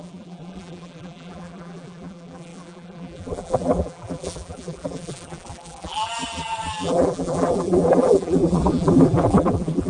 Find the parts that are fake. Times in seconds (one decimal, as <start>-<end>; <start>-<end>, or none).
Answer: 0.0-9.9